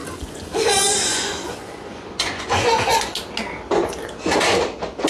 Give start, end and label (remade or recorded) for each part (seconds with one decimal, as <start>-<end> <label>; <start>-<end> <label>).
0.0-3.1 remade; 3.1-5.1 recorded